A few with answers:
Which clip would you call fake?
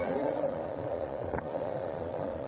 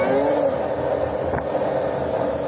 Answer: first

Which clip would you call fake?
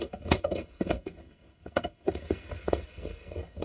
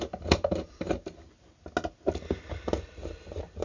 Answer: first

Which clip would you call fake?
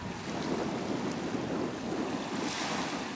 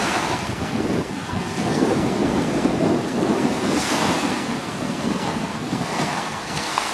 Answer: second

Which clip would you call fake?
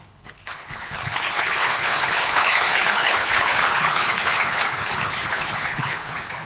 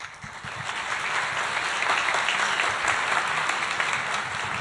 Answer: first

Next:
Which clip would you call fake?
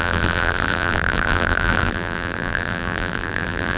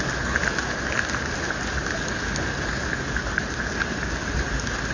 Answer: first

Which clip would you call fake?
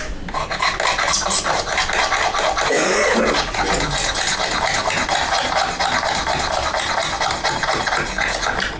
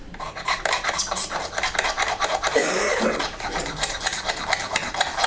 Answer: second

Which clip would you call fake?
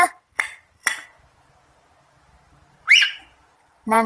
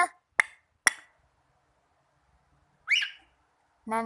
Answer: first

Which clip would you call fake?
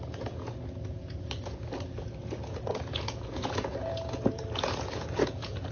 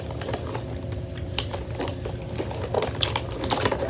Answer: first